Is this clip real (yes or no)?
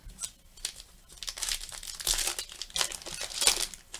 yes